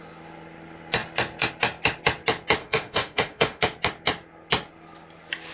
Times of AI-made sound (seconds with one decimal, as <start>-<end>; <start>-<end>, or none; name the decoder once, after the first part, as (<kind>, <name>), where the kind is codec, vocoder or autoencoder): 2.6-3.6 (autoencoder, DAC-VAE)